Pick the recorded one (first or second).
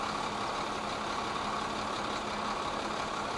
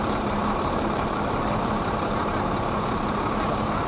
first